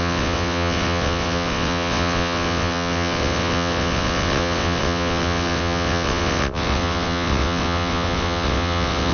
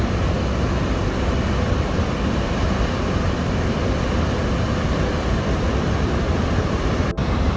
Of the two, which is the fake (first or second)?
first